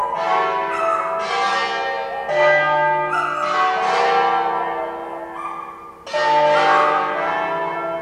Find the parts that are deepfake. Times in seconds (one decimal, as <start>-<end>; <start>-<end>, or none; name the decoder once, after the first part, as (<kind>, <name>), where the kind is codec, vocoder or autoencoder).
none